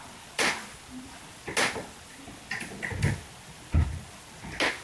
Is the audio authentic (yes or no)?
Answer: yes